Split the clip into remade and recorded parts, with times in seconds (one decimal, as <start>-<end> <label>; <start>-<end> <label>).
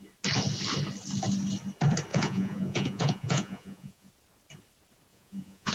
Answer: 0.0-2.1 recorded; 2.1-4.1 remade; 4.1-5.1 recorded; 5.1-5.7 remade